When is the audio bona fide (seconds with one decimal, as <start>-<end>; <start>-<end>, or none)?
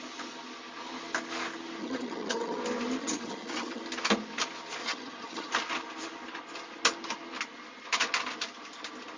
0.0-1.8; 2.6-3.0; 3.8-4.8; 5.5-9.2